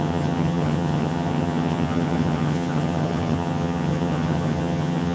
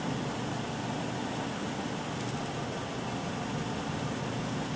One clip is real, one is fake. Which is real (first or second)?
second